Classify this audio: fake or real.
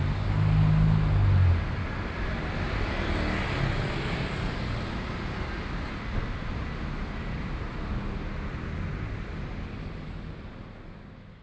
real